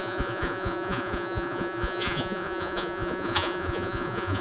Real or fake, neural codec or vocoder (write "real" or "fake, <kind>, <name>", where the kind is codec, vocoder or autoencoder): fake, vocoder, Vocos